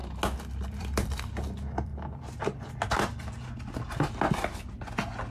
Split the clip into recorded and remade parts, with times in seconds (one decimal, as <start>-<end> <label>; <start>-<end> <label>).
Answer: 0.0-0.6 recorded; 0.6-1.9 remade; 1.9-5.3 recorded